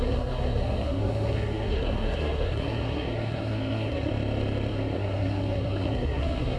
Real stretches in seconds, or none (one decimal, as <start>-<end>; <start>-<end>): 4.1-4.7